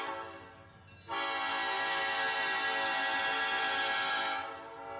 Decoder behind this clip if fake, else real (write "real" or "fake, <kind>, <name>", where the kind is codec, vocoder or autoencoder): real